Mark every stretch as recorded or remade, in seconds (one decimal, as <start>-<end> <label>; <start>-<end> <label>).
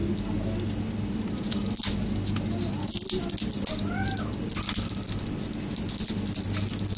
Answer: 0.0-7.0 recorded